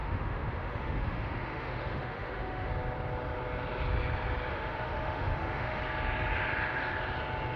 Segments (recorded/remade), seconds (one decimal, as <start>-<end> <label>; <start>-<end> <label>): 0.0-2.7 remade; 2.7-4.5 recorded; 4.5-5.8 remade; 5.8-7.6 recorded